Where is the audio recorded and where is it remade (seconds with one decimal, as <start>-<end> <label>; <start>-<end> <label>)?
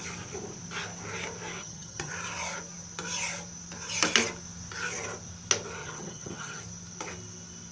0.0-1.6 recorded; 1.6-2.1 remade; 2.1-5.8 recorded; 5.8-6.6 remade; 6.6-7.7 recorded